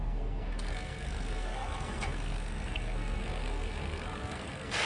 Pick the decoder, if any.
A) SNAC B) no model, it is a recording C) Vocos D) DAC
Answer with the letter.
A